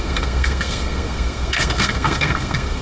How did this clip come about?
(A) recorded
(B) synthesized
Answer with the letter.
B